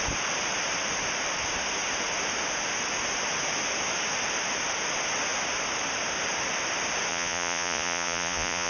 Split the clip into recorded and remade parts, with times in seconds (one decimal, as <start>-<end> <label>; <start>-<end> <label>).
0.0-7.1 recorded; 7.1-8.7 remade